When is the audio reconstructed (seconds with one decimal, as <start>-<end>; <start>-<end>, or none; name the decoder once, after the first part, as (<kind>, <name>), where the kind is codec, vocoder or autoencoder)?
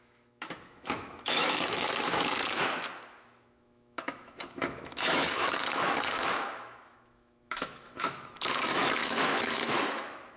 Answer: 0.0-2.6 (autoencoder, DAC-VAE); 3.1-10.4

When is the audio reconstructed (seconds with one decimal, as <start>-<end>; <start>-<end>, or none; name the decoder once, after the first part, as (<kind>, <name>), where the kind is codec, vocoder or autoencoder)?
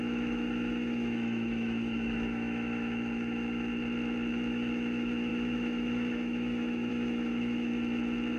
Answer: 0.0-3.7 (autoencoder, DAC-VAE); 4.3-7.7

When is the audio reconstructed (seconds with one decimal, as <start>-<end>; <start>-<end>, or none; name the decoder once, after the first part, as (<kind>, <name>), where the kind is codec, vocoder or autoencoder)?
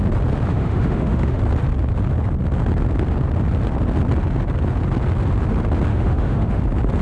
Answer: 0.5-1.4 (autoencoder, DAC-VAE); 5.9-6.6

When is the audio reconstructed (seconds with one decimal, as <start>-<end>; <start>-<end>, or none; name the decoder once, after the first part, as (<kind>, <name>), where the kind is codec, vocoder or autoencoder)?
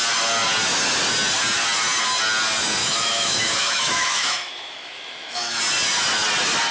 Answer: 2.8-5.6 (autoencoder, DAC-VAE)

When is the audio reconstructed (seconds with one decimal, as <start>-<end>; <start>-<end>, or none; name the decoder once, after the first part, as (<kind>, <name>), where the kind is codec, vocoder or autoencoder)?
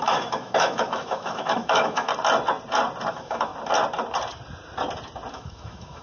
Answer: 0.0-2.1 (autoencoder, DAC-VAE); 3.1-3.5; 5.3-6.0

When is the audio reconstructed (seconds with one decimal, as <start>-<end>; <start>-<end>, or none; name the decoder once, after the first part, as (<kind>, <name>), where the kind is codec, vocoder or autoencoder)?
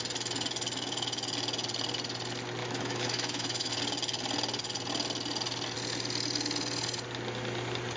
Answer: 2.6-3.7 (autoencoder, DAC-VAE)